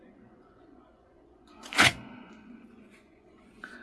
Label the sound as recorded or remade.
remade